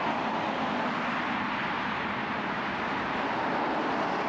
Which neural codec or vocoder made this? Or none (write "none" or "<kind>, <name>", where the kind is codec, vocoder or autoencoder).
none